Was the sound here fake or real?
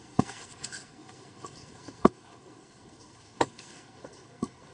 fake